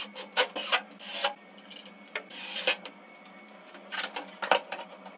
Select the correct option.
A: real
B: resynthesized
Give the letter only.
A